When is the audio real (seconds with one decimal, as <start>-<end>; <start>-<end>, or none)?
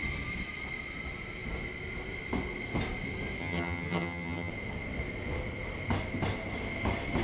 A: 0.0-3.4; 4.5-7.2